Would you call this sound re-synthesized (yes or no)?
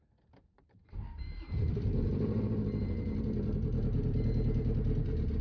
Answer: yes